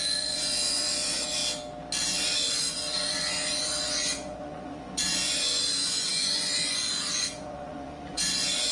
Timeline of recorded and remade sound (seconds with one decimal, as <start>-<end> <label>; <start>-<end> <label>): 0.0-1.4 remade; 1.4-2.1 recorded; 2.1-8.7 remade